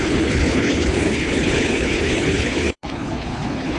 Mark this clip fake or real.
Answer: fake